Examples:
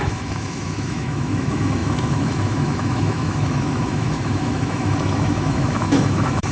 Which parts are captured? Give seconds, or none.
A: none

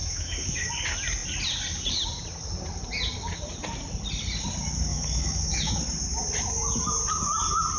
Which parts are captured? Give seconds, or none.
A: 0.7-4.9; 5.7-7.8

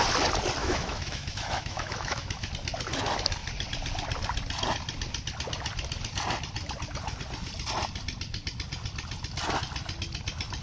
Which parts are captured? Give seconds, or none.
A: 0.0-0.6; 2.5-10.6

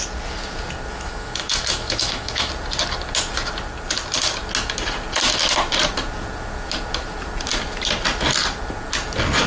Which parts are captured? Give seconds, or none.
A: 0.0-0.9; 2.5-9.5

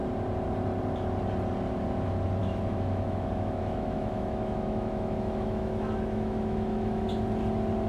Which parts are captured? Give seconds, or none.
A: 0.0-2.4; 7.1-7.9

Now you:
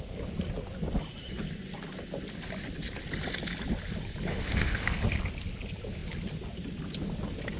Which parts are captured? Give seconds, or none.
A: 0.0-4.3; 5.0-7.6

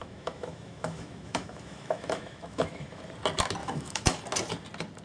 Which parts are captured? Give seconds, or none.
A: 3.0-3.6; 4.2-5.0

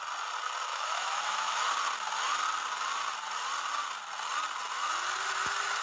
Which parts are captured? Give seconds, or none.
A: 0.0-0.7; 1.7-5.8